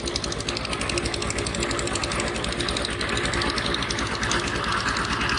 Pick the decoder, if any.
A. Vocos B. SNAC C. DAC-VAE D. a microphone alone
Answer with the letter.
D